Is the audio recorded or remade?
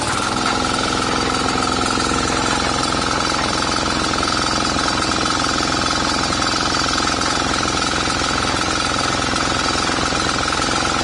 recorded